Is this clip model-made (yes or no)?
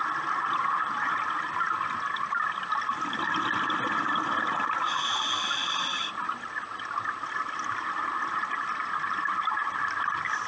no